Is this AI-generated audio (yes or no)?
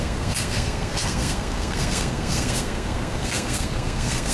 yes